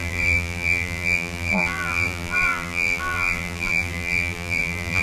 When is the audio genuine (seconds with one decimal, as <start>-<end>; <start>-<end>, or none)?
none